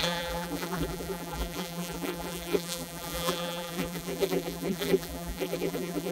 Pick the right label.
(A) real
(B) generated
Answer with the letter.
B